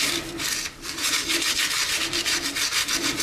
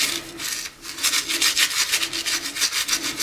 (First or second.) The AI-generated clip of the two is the first